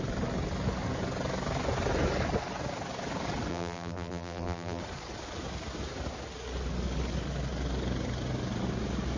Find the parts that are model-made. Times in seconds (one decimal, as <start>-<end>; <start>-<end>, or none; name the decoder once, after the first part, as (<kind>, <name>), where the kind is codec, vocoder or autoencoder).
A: 3.5-4.8 (vocoder, BigVGAN v2)